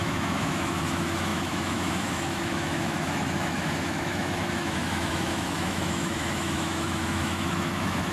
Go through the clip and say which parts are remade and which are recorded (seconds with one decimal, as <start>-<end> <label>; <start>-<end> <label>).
0.0-8.1 remade